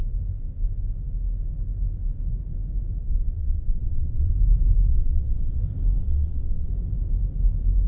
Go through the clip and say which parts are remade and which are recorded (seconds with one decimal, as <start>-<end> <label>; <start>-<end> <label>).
0.0-3.0 recorded; 3.0-4.3 remade; 4.3-4.9 recorded; 4.9-5.6 remade; 5.6-6.0 recorded; 6.0-6.7 remade; 6.7-7.9 recorded